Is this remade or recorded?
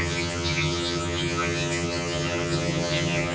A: remade